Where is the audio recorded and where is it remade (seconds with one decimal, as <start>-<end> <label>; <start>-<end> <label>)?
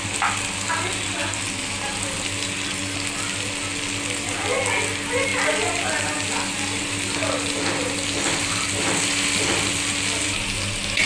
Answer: 0.0-11.1 recorded